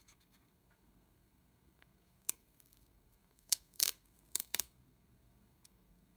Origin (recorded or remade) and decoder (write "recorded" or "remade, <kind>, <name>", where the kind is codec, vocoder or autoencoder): remade, codec, SNAC